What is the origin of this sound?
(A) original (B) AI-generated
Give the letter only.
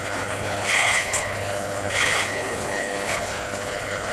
B